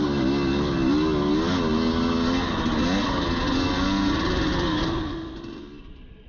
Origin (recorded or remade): recorded